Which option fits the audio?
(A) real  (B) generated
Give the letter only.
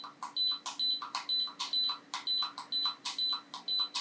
A